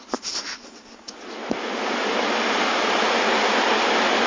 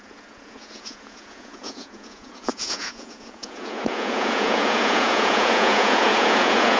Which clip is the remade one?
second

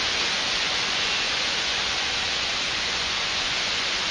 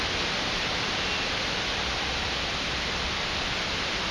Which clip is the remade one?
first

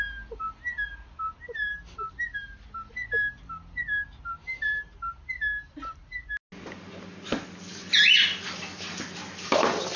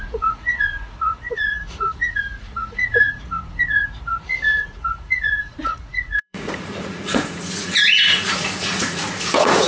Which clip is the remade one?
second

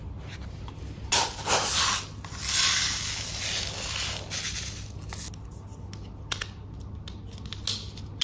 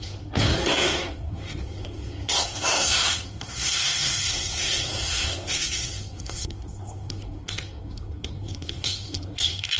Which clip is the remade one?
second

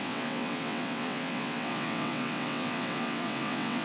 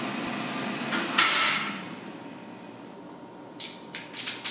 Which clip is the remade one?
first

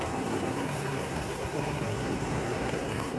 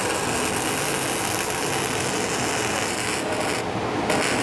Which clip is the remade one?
first